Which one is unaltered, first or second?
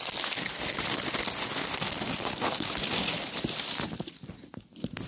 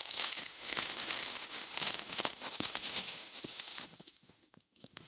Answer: first